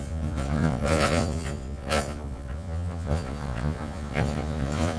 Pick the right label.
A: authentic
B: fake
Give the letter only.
B